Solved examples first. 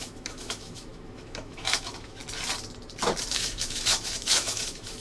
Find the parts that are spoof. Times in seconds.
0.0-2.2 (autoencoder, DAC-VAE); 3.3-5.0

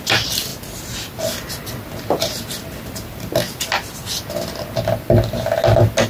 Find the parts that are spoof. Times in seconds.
none

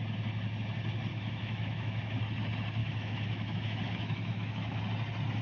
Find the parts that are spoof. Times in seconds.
1.1-2.2 (autoencoder, DAC-VAE); 2.8-4.8

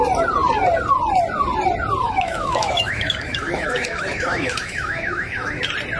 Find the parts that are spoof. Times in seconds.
2.0-5.6 (autoencoder, DAC-VAE)

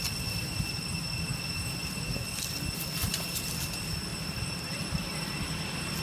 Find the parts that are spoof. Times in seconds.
none

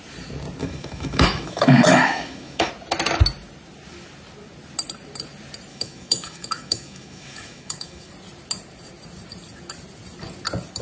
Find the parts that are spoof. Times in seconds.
0.6-2.7 (autoencoder, DAC-VAE); 5.7-8.1